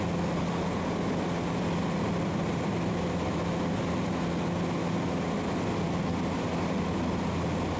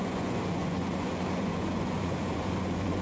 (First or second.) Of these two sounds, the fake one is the second